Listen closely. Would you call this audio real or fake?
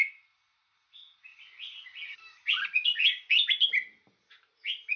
real